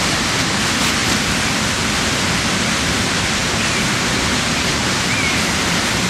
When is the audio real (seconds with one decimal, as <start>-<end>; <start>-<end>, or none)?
0.0-1.0; 1.8-3.4; 4.3-6.1